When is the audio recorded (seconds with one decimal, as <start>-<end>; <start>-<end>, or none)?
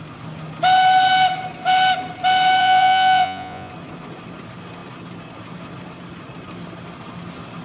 0.0-2.6; 3.7-7.6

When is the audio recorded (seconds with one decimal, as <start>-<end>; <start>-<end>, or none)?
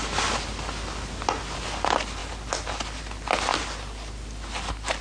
0.0-5.0